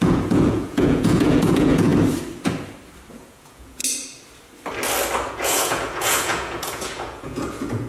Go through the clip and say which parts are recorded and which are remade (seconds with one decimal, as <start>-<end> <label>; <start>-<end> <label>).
0.0-1.9 remade; 1.9-3.1 recorded; 3.1-3.8 remade; 3.8-5.3 recorded; 5.3-7.9 remade